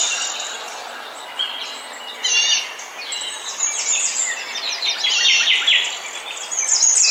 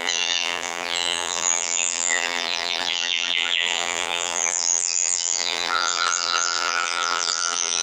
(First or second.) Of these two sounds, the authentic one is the first